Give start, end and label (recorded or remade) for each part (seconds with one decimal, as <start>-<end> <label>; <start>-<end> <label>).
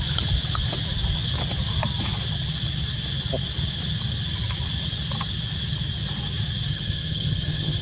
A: 0.0-6.7 recorded; 6.7-7.8 remade